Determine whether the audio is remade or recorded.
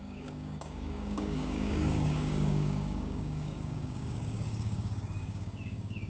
remade